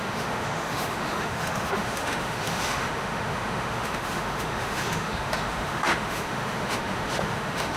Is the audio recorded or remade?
remade